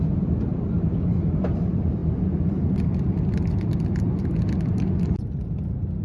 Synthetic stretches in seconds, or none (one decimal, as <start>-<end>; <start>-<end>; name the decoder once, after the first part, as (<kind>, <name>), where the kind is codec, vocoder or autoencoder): none